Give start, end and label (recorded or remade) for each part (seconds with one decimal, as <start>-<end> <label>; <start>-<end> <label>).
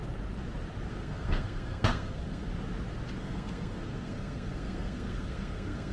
0.0-0.9 recorded; 0.9-2.5 remade; 2.5-3.2 recorded; 3.2-5.9 remade